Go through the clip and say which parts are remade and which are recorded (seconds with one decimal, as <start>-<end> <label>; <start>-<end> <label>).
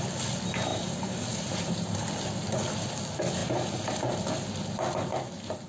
0.0-0.7 recorded; 0.7-2.0 remade; 2.0-5.7 recorded